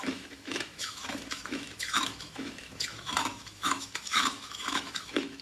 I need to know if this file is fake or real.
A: fake